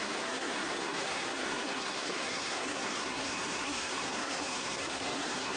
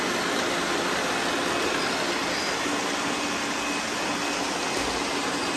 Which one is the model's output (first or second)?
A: first